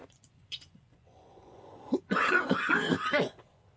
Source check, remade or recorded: remade